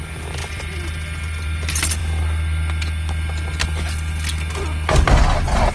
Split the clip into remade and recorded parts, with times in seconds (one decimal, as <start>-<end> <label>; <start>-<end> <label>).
0.0-5.7 recorded